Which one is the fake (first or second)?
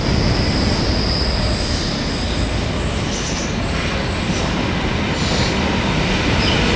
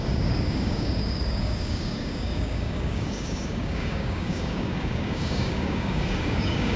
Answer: second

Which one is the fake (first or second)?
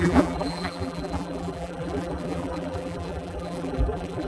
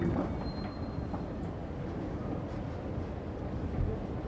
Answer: first